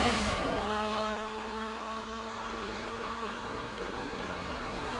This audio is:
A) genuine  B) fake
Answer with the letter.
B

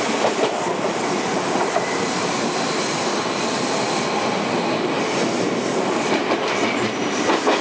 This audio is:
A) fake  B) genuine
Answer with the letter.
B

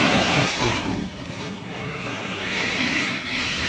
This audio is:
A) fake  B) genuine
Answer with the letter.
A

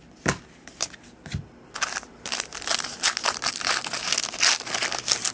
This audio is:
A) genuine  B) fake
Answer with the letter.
A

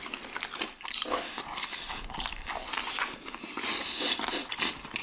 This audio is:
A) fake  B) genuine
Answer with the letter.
B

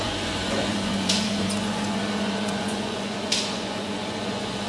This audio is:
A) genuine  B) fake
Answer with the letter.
B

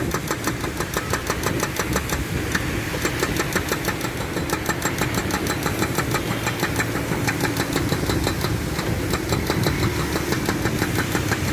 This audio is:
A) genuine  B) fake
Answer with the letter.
A